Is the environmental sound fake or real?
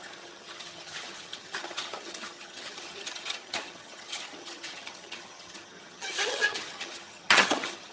fake